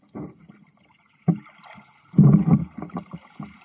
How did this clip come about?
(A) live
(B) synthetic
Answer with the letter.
A